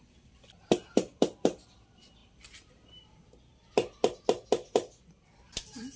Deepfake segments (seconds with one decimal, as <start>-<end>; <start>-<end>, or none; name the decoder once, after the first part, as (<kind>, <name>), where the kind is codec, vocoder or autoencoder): 0.0-2.2 (vocoder, BigVGAN v2); 5.0-6.0